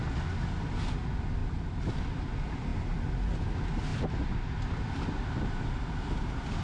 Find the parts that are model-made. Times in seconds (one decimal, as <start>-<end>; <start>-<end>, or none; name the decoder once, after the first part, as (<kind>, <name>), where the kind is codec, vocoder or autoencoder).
none